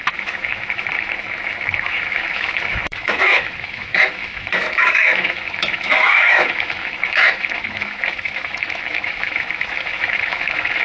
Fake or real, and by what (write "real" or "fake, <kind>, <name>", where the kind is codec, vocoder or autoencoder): fake, autoencoder, DAC-VAE